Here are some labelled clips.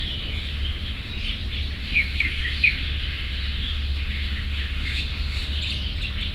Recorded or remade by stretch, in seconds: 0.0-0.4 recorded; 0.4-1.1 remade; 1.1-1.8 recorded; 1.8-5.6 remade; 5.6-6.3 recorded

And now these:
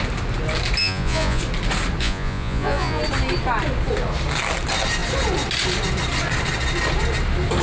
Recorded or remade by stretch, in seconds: 0.0-0.8 recorded; 0.8-1.4 remade; 1.4-2.0 recorded; 2.0-3.0 remade; 3.0-7.6 recorded

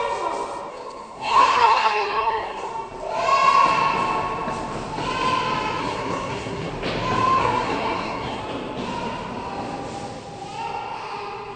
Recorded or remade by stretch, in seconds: 0.0-0.7 recorded; 0.7-2.7 remade; 2.7-5.8 recorded; 5.8-6.7 remade; 6.7-7.4 recorded; 7.4-8.4 remade; 8.4-11.6 recorded